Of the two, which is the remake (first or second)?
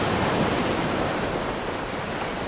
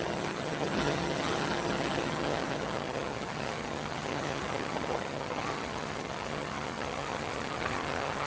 second